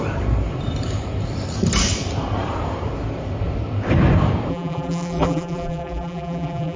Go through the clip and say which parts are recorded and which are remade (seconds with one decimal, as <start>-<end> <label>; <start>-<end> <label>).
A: 0.0-4.5 recorded; 4.5-6.8 remade